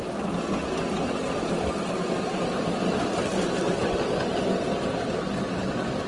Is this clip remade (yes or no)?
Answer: no